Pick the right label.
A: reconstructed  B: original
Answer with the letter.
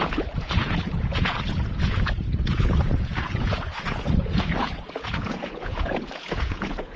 A